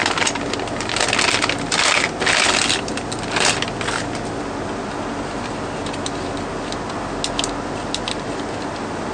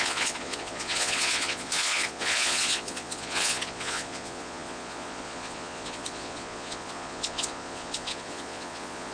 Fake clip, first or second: second